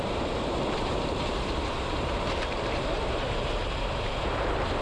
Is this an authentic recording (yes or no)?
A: no